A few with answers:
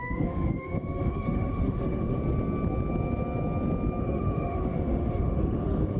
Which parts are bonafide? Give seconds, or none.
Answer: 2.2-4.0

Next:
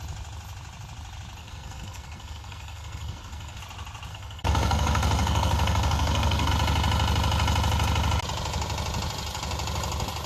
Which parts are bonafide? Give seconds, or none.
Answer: 0.0-1.4; 3.6-4.1; 6.5-10.3

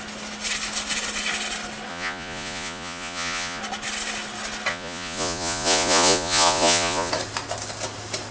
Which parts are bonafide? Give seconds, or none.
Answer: 0.0-1.9; 3.6-4.7; 7.1-8.3

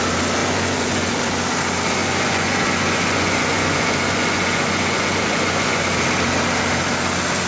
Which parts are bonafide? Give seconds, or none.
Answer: 0.0-0.4; 1.1-2.0; 5.8-7.5

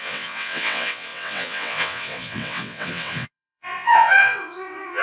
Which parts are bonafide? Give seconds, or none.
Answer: none

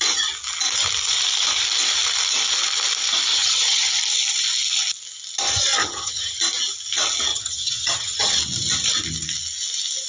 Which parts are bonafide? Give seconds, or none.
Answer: 0.0-3.3; 3.9-5.8; 6.4-7.3; 8.3-10.1

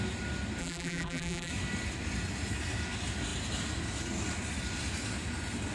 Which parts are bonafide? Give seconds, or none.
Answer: 0.0-0.6; 1.5-5.7